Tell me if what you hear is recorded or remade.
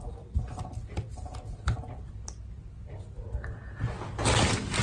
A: recorded